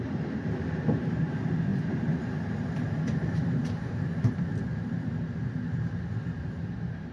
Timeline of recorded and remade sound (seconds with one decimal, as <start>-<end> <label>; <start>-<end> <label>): 0.0-7.1 remade